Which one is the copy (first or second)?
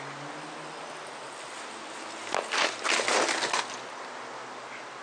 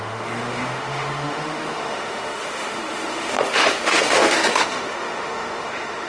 second